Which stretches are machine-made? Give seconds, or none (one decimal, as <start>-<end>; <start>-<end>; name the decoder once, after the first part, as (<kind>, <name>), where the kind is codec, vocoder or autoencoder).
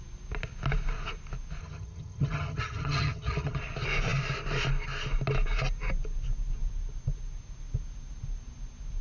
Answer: 1.6-3.6 (vocoder, HiFi-GAN)